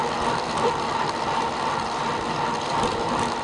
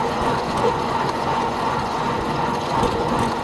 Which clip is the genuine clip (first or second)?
first